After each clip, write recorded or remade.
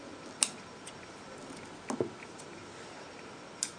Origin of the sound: recorded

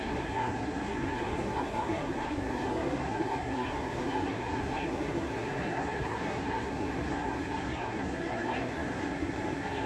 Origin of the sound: remade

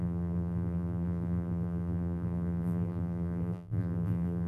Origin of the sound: remade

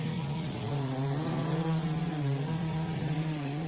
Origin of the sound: remade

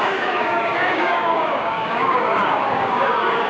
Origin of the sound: remade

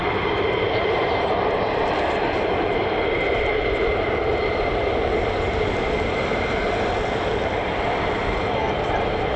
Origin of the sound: recorded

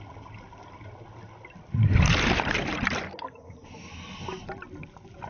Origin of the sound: recorded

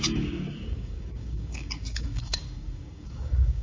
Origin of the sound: remade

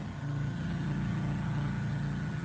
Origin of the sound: remade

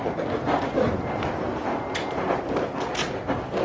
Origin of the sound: recorded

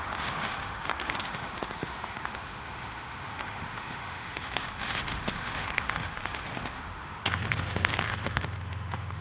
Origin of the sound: remade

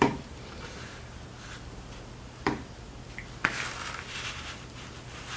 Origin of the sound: recorded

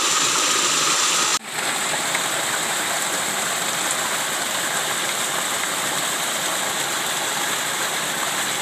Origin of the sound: recorded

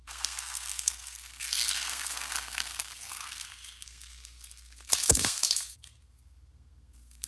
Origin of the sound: remade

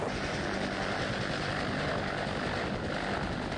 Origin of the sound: recorded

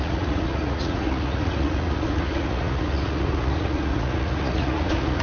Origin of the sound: remade